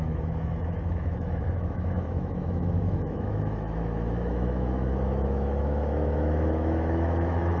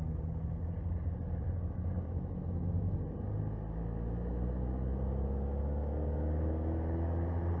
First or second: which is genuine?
second